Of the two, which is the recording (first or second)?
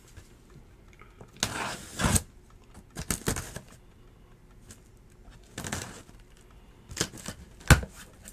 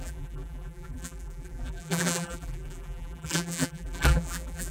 first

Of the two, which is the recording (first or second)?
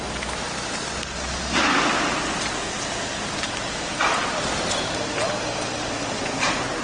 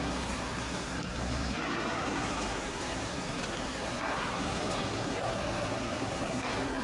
first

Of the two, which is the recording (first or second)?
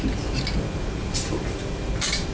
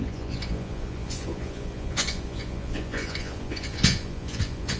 first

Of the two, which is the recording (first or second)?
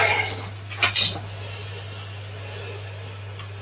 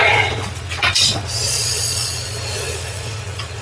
first